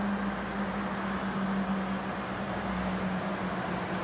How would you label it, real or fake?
real